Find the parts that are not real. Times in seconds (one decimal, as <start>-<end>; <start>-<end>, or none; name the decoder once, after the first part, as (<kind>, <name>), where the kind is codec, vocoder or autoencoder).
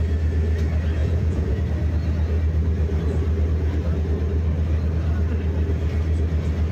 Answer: 1.0-1.6 (vocoder, Vocos)